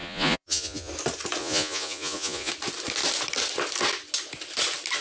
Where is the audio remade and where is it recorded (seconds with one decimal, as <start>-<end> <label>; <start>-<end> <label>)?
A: 0.0-0.9 remade; 0.9-1.4 recorded; 1.4-2.5 remade; 2.5-5.0 recorded